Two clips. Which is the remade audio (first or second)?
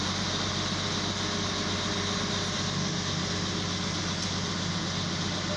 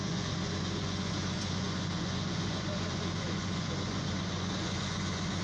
second